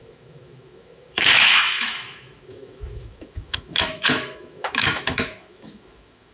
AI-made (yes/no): yes